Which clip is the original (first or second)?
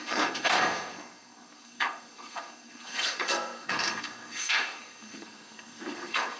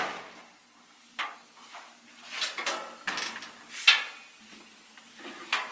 second